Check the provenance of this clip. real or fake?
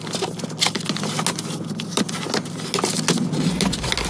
real